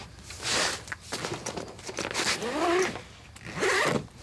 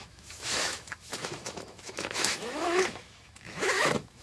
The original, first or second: first